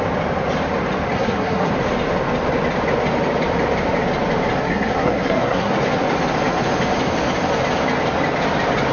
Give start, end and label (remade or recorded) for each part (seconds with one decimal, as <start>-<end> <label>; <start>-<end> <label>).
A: 0.0-1.1 recorded; 1.1-1.7 remade; 1.7-4.6 recorded; 4.6-5.7 remade; 5.7-8.9 recorded

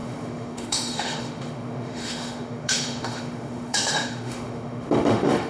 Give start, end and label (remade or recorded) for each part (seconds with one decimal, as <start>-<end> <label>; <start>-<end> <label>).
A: 0.0-5.5 remade

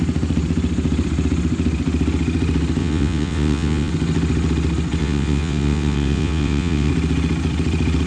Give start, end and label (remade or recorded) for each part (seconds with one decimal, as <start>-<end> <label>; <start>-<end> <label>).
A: 0.0-2.8 recorded; 2.8-3.9 remade; 3.9-5.0 recorded; 5.0-6.9 remade; 6.9-8.1 recorded

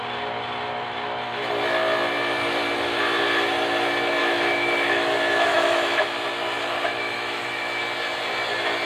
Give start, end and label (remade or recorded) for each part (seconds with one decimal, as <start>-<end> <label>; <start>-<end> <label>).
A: 0.0-4.2 recorded; 4.2-6.0 remade; 6.0-6.9 recorded; 6.9-7.8 remade; 7.8-8.9 recorded

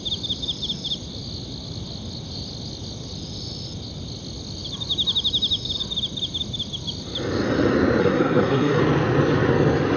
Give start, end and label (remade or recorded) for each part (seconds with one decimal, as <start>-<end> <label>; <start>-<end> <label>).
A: 0.0-8.0 recorded; 8.0-8.8 remade; 8.8-10.0 recorded